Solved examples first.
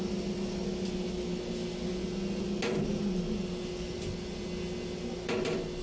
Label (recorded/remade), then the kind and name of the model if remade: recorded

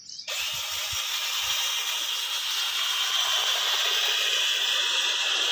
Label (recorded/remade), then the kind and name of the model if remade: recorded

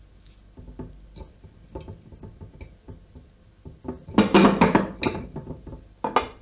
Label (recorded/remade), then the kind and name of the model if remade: recorded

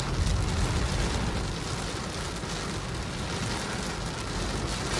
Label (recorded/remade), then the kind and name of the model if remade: recorded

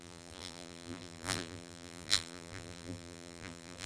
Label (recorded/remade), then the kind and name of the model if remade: remade, vocoder, BigVGAN v2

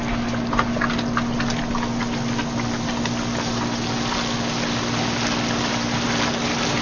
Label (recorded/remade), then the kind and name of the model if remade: recorded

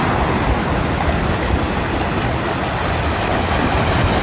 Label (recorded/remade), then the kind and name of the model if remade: recorded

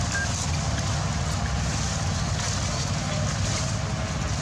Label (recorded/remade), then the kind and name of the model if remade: recorded